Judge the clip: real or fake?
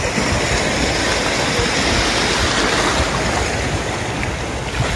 real